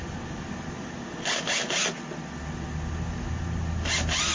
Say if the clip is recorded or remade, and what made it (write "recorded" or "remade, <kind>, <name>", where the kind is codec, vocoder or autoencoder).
recorded